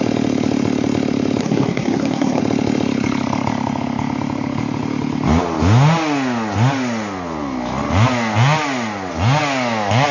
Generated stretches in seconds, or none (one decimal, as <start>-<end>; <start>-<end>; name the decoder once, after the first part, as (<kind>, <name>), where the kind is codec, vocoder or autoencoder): 1.4-2.4 (codec, SNAC)